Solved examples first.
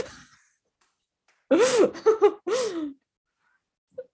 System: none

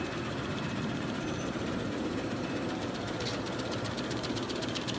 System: vocoder, BigVGAN v2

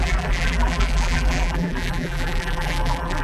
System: vocoder, BigVGAN v2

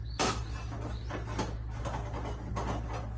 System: none